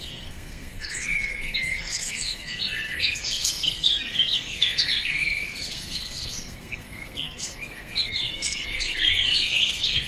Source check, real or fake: fake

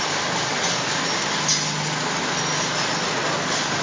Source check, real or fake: real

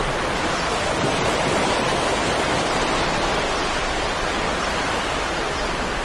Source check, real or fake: real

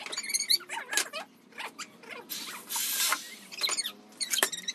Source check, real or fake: real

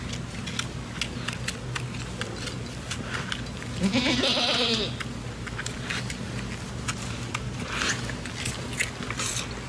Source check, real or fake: real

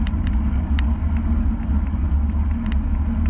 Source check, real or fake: real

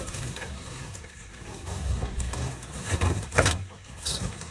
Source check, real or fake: fake